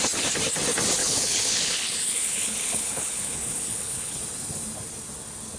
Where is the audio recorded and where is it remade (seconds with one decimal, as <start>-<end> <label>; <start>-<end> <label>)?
0.0-1.0 recorded; 1.0-4.2 remade; 4.2-5.6 recorded